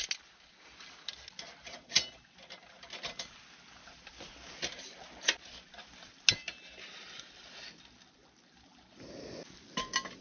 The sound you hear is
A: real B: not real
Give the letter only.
A